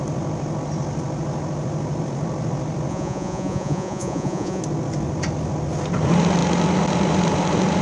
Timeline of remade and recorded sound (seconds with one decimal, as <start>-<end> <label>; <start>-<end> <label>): 0.0-2.9 recorded; 2.9-4.6 remade; 4.6-7.8 recorded